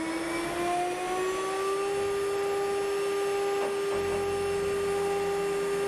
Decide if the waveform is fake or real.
real